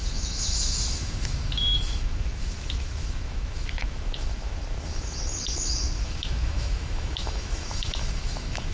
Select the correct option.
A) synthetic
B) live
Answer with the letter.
A